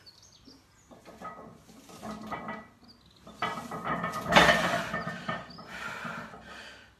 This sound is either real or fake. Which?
real